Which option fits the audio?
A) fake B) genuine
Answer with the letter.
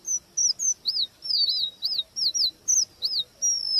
B